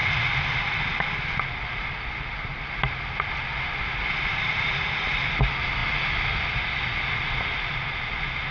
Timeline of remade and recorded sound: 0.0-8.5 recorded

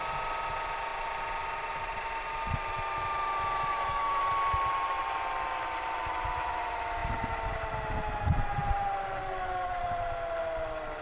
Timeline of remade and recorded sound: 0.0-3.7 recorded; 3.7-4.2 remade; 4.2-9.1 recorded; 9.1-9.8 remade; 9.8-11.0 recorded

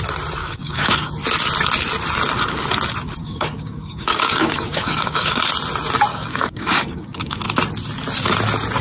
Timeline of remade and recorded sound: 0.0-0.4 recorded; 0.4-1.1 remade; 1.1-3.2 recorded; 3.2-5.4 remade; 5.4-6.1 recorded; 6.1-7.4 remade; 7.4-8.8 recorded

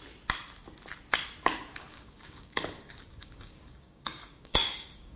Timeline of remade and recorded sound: 0.0-1.9 recorded; 1.9-5.2 remade

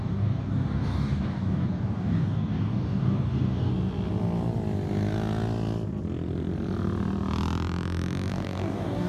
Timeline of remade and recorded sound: 0.0-3.7 remade; 3.7-8.3 recorded; 8.3-9.1 remade

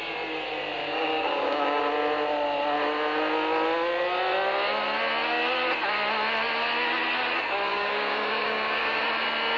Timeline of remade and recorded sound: 0.0-0.8 recorded; 0.8-1.8 remade; 1.8-7.7 recorded; 7.7-9.0 remade; 9.0-9.6 recorded